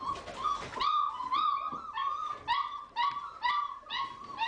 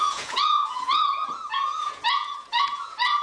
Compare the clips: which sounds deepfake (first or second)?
second